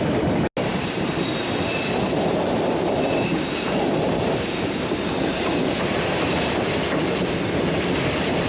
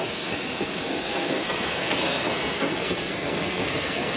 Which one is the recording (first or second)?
first